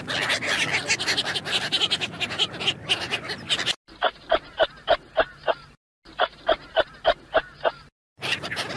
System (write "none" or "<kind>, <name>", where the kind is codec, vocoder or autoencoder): none